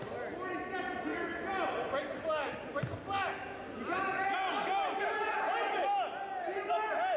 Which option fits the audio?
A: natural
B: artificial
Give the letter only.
A